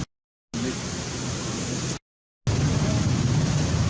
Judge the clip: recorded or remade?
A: recorded